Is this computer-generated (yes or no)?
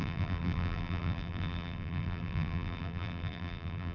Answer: yes